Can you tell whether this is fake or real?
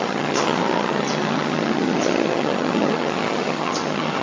fake